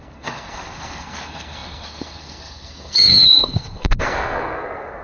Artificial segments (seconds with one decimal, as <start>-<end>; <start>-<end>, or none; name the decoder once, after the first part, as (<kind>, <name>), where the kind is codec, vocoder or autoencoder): 0.0-5.0 (codec, SNAC)